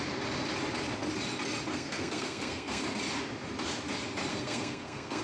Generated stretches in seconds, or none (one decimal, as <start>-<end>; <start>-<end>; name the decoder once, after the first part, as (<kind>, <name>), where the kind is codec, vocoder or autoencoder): 1.7-2.8 (codec, SNAC); 4.3-5.2